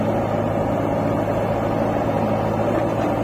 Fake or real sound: real